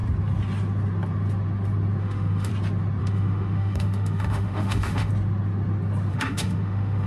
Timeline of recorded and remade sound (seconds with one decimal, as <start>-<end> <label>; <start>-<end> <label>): 0.0-2.0 recorded; 2.0-2.5 remade; 2.5-3.0 recorded; 3.0-5.1 remade; 5.1-6.1 recorded; 6.1-7.1 remade